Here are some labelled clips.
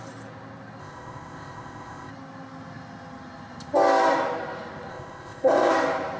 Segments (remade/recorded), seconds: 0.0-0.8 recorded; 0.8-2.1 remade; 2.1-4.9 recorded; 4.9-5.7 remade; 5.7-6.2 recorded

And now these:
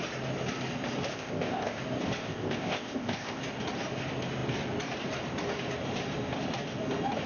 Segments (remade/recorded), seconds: 0.0-1.1 recorded; 1.1-1.8 remade; 1.8-2.2 recorded; 2.2-3.4 remade; 3.4-7.3 recorded

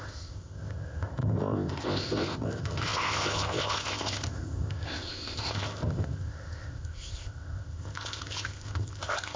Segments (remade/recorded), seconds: 0.0-9.4 remade

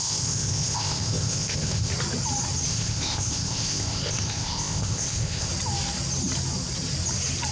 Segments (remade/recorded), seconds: 0.0-1.9 remade; 1.9-2.7 recorded; 2.7-5.5 remade; 5.5-7.5 recorded

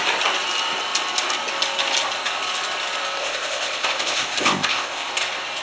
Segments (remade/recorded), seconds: 0.0-3.2 recorded; 3.2-5.1 remade; 5.1-5.6 recorded